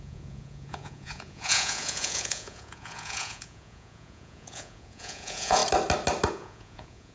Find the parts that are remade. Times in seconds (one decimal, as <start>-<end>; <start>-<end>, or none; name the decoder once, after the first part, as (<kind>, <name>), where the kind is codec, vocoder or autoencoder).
0.0-5.6 (vocoder, Vocos); 6.3-7.1